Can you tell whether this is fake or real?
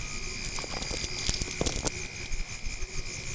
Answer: real